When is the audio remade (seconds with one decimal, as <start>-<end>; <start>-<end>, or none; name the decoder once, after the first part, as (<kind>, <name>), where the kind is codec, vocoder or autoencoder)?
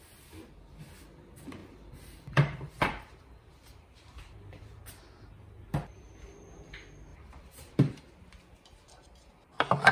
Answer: 1.6-4.9 (vocoder, BigVGAN v2); 7.1-8.1